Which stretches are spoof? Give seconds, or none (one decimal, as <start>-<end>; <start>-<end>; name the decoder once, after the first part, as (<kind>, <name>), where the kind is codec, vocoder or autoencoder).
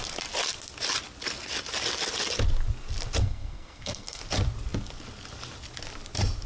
3.2-4.2 (codec, SNAC)